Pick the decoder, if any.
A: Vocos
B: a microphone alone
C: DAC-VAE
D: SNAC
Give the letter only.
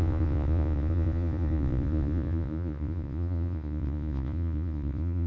A